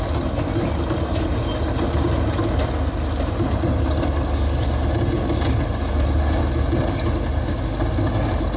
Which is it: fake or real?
real